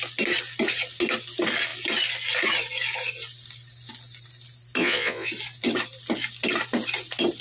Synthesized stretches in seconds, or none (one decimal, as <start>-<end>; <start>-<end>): 4.8-5.3